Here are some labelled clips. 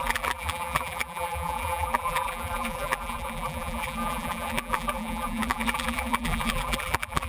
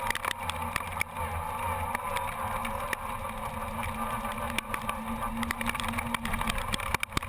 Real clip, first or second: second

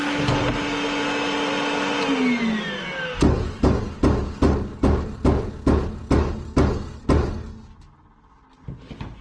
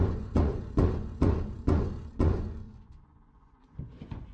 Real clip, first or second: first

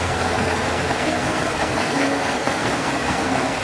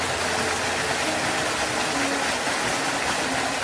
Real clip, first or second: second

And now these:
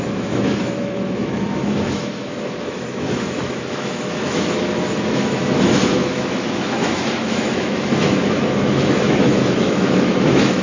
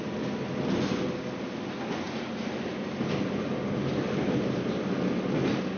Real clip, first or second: second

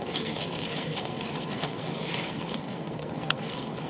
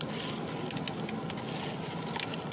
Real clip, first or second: second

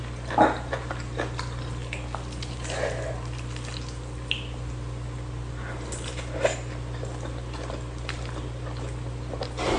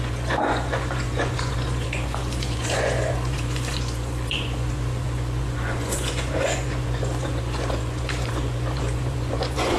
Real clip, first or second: first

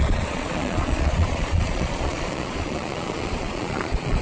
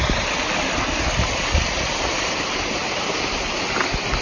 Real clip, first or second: second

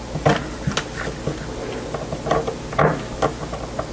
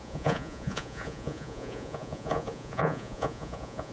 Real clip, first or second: first